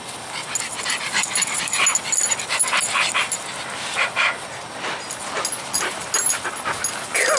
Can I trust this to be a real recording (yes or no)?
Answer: yes